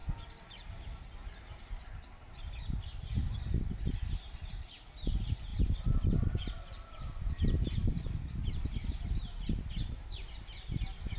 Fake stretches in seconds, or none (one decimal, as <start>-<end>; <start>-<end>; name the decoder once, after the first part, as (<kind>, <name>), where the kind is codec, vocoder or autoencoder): 5.5-7.3 (vocoder, BigVGAN v2); 7.8-8.5